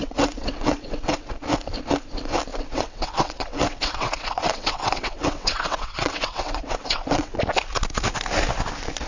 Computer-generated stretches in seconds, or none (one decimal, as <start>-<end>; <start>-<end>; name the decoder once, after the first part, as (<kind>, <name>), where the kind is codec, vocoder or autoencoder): 0.0-1.3 (vocoder, WaveNeXt); 2.5-7.4